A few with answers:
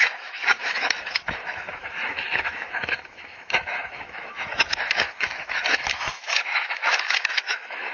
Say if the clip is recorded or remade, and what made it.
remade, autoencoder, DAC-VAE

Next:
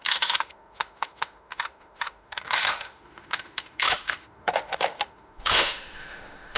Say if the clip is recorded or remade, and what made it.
remade, autoencoder, DAC-VAE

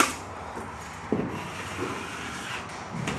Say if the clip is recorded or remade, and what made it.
recorded